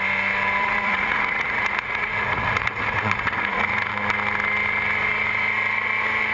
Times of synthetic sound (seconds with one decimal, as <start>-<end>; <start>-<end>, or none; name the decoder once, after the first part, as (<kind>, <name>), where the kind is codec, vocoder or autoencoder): 0.6-3.9 (vocoder, Vocos)